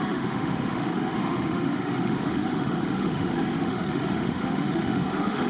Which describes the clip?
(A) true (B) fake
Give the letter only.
B